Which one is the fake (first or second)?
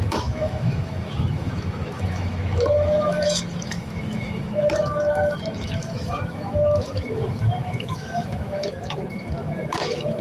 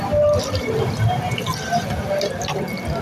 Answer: first